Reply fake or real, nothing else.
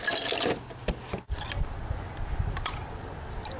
real